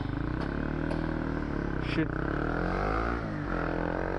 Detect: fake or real real